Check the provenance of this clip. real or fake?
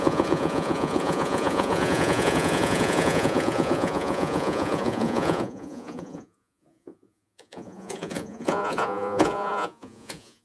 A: fake